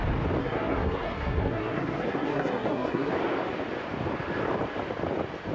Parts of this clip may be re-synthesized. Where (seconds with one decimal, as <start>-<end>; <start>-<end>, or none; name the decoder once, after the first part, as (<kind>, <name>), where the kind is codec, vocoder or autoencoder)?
0.4-3.1 (codec, SNAC)